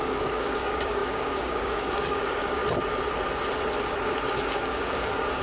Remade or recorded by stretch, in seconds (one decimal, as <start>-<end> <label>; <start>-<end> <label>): 0.0-2.6 remade; 2.6-4.4 recorded; 4.4-5.4 remade